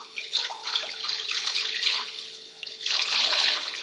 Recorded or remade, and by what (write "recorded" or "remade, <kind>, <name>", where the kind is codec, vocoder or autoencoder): remade, codec, HILCodec